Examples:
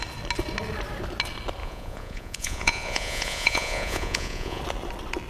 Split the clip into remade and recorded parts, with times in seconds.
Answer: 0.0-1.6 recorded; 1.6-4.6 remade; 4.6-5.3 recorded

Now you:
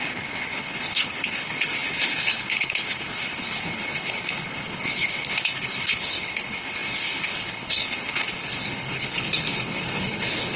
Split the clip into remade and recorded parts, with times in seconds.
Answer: 0.0-10.6 remade

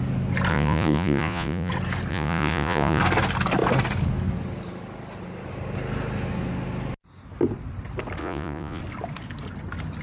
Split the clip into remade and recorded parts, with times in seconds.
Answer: 0.0-0.5 recorded; 0.5-1.7 remade; 1.7-2.1 recorded; 2.1-3.0 remade; 3.0-8.2 recorded; 8.2-8.8 remade; 8.8-10.0 recorded

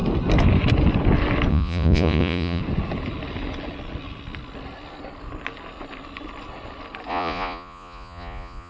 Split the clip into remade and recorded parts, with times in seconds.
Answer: 0.0-1.5 recorded; 1.5-2.6 remade; 2.6-7.1 recorded; 7.1-8.7 remade

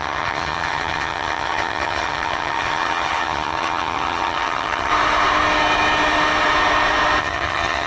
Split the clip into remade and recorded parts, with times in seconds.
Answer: 0.0-4.9 remade; 4.9-7.2 recorded; 7.2-7.9 remade

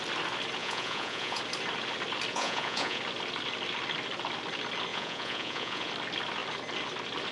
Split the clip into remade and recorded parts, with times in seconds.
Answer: 0.0-0.6 recorded; 0.6-1.4 remade; 1.4-2.3 recorded; 2.3-3.0 remade; 3.0-4.9 recorded; 4.9-5.9 remade; 5.9-7.3 recorded

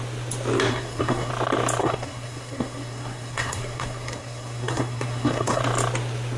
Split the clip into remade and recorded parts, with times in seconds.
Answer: 0.0-0.7 recorded; 0.7-1.3 remade; 1.3-1.8 recorded; 1.8-5.6 remade; 5.6-6.4 recorded

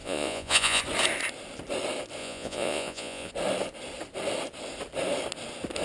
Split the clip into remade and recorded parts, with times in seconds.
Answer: 0.0-0.8 remade; 0.8-2.2 recorded; 2.2-3.3 remade; 3.3-5.8 recorded